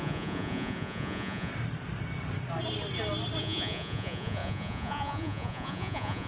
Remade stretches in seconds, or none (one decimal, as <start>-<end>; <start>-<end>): 0.0-1.5; 3.4-6.3